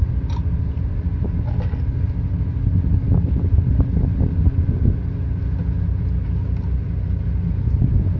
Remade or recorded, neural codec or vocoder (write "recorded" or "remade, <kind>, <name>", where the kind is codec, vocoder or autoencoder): recorded